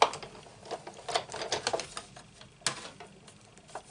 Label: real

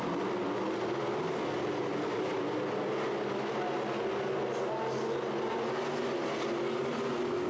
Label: real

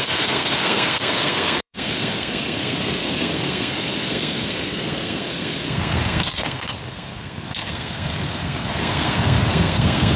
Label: fake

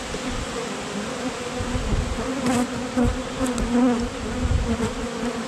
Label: real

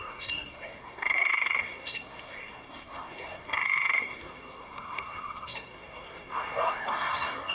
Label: fake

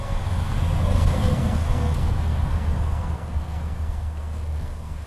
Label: fake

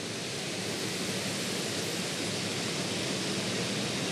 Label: real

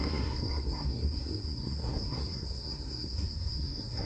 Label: fake